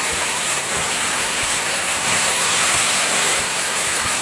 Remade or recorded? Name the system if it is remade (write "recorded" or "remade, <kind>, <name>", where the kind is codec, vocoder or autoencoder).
remade, codec, SNAC